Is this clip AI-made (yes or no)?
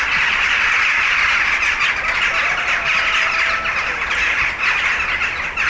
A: no